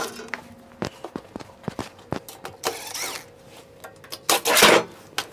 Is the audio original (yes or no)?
yes